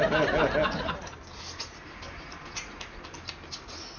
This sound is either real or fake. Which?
real